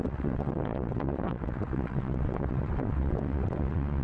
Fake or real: fake